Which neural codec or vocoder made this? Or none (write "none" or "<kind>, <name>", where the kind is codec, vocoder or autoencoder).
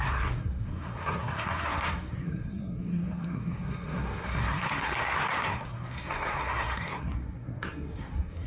codec, SNAC